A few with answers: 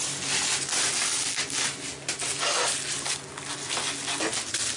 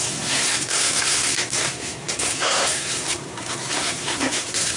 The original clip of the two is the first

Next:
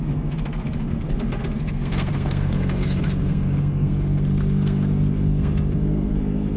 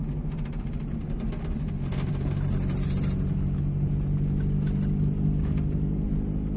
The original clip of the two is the second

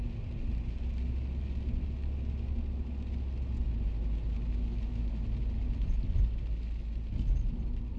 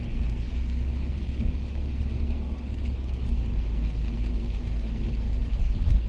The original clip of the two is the first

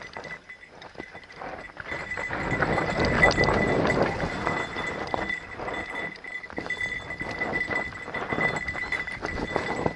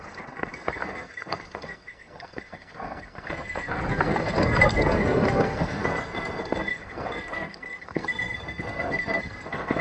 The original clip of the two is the first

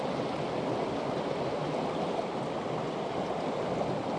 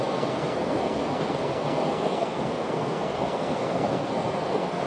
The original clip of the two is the first